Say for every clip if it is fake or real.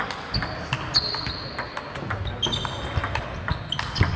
real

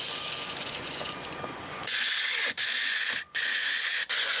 fake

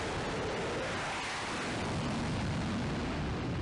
real